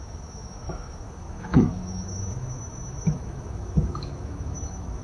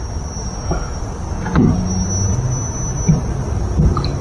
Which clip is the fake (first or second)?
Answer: first